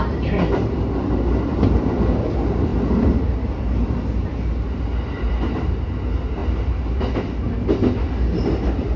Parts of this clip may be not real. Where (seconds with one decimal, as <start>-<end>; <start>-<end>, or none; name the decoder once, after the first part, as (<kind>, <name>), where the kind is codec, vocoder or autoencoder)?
1.0-1.6 (vocoder, BigVGAN v2)